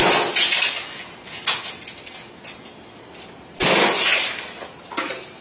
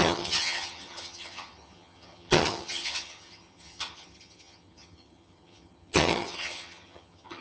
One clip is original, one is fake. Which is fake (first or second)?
second